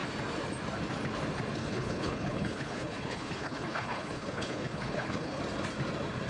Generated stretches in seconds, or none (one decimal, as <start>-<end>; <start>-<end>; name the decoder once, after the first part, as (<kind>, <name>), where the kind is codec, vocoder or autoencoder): 1.6-5.4 (codec, HILCodec)